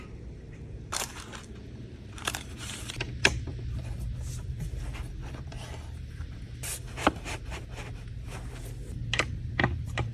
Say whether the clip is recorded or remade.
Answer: remade